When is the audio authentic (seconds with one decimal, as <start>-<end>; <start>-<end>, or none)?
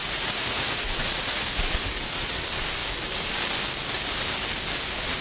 2.4-5.2